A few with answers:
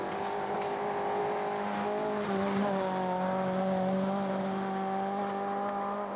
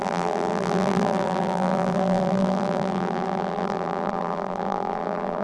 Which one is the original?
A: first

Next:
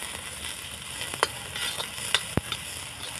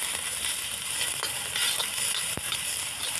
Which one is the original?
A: first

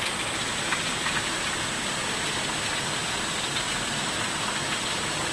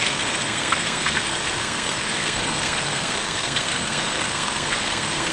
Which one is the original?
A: first